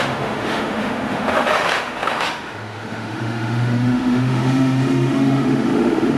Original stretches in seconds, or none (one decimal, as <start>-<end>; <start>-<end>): none